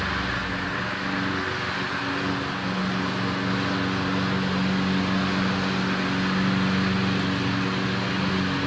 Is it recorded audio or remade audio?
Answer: recorded